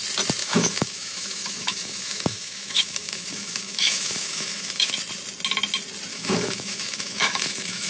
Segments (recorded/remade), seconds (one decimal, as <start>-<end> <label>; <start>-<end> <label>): 0.0-0.4 recorded; 0.4-4.9 remade; 4.9-6.1 recorded; 6.1-7.9 remade